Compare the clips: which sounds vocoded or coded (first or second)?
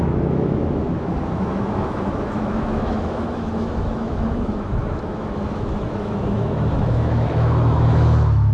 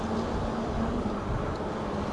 first